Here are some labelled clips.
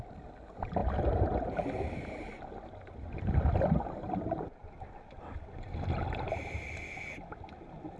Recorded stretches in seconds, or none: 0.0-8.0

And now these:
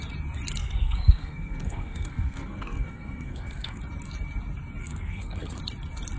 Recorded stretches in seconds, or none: 0.0-0.6; 3.8-4.8; 5.6-6.2

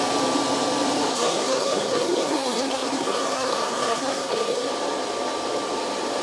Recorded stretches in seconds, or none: 0.0-1.1; 4.7-6.2

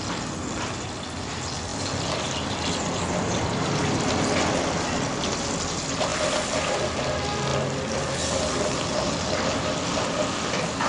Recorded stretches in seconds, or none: 0.0-10.9